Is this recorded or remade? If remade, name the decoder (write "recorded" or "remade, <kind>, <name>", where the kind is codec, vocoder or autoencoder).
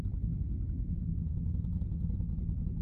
recorded